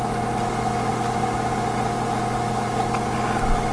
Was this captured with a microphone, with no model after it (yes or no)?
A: yes